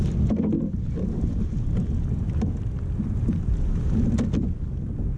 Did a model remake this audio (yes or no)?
no